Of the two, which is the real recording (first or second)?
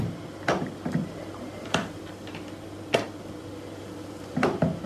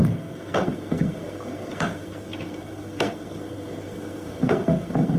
first